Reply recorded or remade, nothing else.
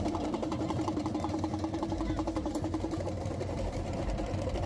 remade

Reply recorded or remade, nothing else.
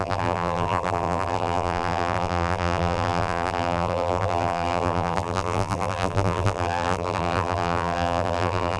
remade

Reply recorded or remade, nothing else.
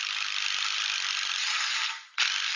remade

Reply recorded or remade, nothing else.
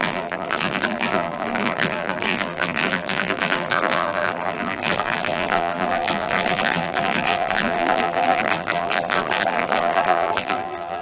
remade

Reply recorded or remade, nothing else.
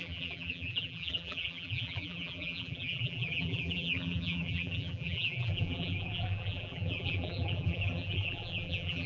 remade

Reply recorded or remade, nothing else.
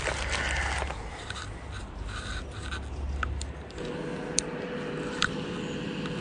recorded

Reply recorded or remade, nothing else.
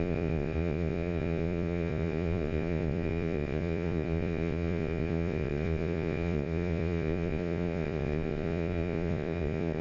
remade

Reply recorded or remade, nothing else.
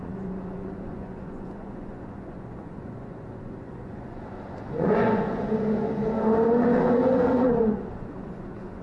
remade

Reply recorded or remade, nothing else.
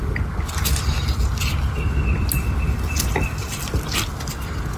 recorded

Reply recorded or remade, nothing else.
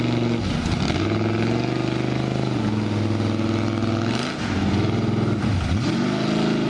recorded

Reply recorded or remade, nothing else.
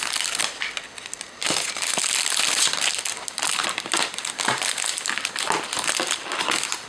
recorded